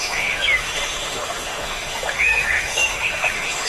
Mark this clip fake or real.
fake